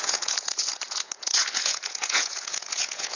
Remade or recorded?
remade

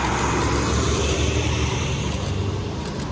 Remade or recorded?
recorded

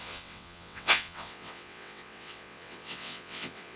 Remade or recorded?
remade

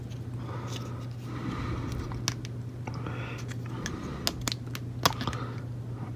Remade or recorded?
recorded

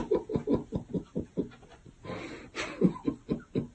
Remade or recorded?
recorded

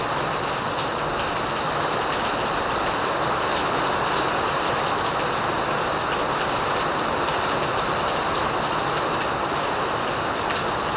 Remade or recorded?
recorded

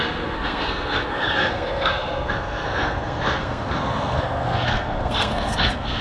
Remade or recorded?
remade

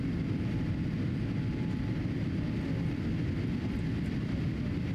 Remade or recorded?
recorded